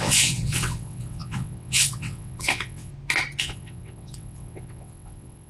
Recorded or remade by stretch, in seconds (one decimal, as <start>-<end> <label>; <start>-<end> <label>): 0.0-2.9 remade; 2.9-3.4 recorded; 3.4-5.5 remade